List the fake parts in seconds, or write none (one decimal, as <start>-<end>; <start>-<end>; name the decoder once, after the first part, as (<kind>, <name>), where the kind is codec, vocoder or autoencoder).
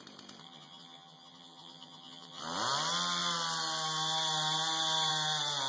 0.4-2.4 (vocoder, HiFi-GAN)